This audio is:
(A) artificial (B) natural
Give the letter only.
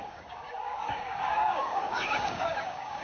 A